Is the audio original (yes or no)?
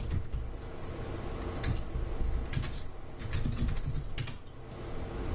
yes